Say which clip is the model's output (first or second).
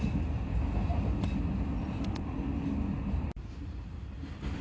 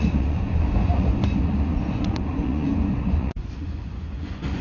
second